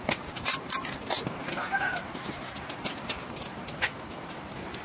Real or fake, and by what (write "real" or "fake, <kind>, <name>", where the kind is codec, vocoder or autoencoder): real